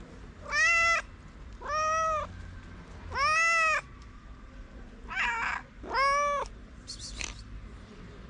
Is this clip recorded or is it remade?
recorded